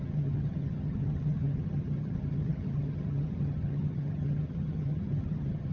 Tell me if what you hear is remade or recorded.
remade